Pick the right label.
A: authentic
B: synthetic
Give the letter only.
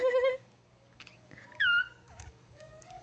B